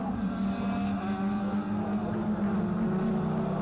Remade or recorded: recorded